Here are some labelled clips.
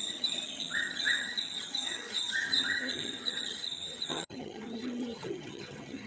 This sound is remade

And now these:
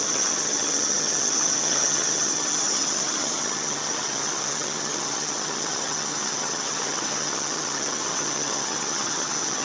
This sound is remade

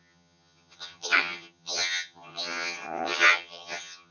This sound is remade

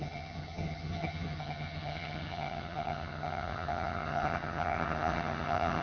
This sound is remade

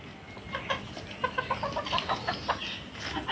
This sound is recorded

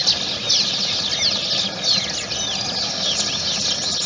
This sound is recorded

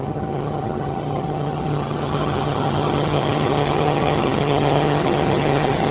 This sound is remade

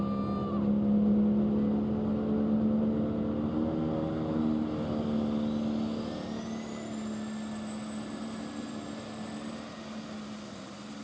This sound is recorded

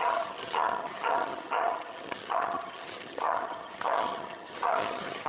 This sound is remade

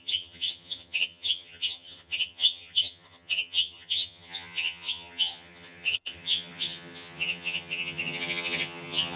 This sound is remade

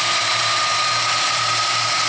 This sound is recorded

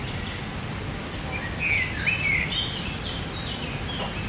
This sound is recorded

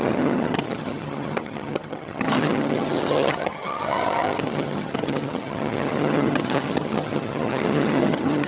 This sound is remade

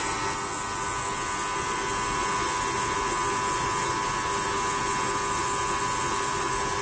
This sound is recorded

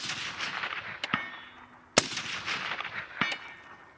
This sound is recorded